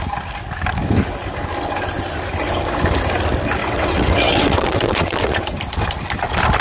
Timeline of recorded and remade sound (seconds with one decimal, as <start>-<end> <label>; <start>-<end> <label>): 0.0-3.6 recorded; 3.6-5.4 remade; 5.4-6.6 recorded